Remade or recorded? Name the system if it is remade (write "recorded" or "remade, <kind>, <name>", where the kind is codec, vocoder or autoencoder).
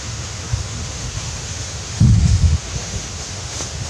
remade, autoencoder, DAC-VAE